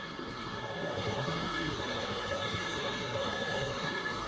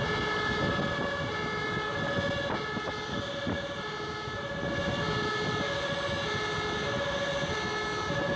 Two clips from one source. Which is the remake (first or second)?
first